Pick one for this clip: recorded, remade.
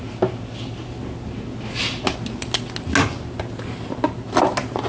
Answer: recorded